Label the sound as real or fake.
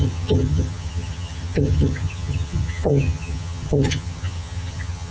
fake